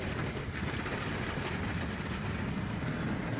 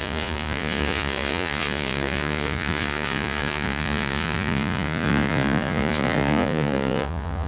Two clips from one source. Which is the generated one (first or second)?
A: second